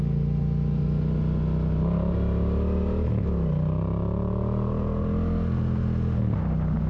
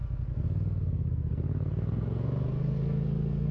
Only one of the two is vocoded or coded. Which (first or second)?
second